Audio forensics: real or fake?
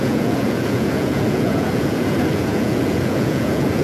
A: fake